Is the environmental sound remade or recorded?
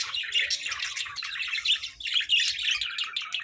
recorded